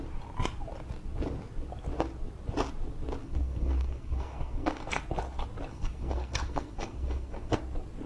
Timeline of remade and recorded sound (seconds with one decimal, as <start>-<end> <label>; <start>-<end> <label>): 0.0-3.2 recorded; 3.2-5.0 remade; 5.0-5.7 recorded; 5.7-7.6 remade; 7.6-8.1 recorded

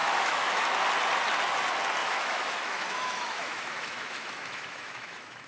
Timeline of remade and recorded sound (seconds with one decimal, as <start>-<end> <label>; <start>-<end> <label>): 0.0-0.6 remade; 0.6-2.0 recorded; 2.0-5.5 remade

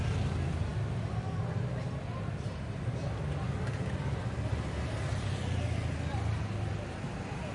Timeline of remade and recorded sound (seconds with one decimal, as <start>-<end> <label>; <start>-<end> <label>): 0.0-7.5 recorded

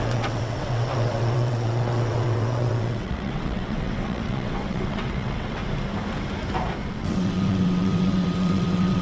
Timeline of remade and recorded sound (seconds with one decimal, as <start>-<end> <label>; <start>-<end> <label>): 0.0-5.6 remade; 5.6-6.9 recorded; 6.9-9.0 remade

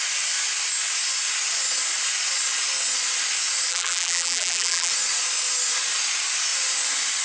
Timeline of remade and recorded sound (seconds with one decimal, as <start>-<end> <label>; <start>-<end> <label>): 0.0-3.7 recorded; 3.7-4.9 remade; 4.9-7.2 recorded

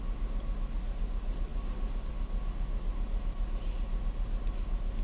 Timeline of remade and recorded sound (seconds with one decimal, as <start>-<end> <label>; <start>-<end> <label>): 0.0-5.0 recorded

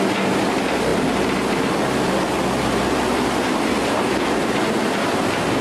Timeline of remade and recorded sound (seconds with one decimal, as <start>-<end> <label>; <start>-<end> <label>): 0.0-5.6 recorded

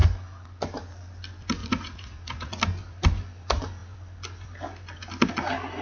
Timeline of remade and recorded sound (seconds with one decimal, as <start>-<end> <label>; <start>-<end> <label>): 0.0-1.6 recorded; 1.6-2.6 remade; 2.6-5.8 recorded